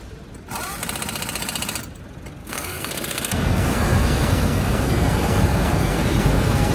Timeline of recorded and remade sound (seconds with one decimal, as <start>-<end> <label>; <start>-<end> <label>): 0.0-2.4 recorded; 2.4-6.7 remade